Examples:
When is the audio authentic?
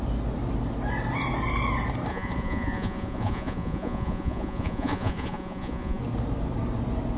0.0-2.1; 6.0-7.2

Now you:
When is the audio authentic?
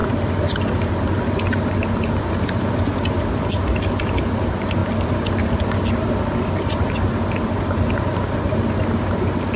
0.0-9.6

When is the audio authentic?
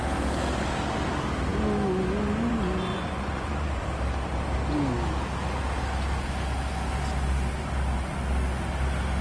0.0-2.9; 3.8-9.2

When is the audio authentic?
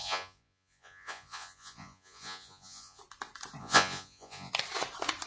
3.0-3.6; 4.5-5.3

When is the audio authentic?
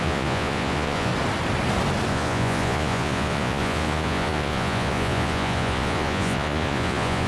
1.1-2.1